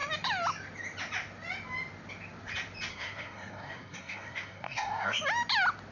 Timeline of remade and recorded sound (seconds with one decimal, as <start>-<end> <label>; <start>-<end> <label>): 0.0-2.9 recorded; 2.9-5.2 remade; 5.2-5.9 recorded